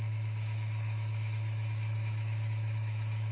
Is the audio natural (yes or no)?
no